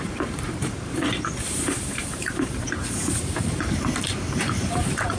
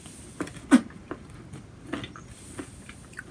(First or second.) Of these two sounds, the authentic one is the second